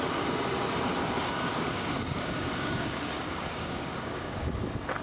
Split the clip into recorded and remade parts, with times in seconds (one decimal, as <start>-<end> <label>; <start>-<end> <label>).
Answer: 0.0-1.5 recorded; 1.5-4.5 remade; 4.5-5.0 recorded